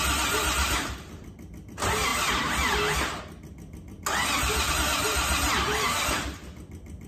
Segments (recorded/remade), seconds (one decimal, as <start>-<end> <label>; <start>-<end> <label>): 0.0-7.1 recorded